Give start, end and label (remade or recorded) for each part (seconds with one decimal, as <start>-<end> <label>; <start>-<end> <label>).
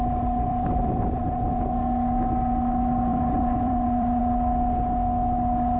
0.0-0.5 recorded; 0.5-1.2 remade; 1.2-3.1 recorded; 3.1-4.2 remade; 4.2-5.8 recorded